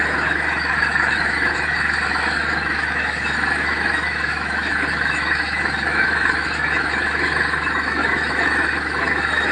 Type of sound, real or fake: fake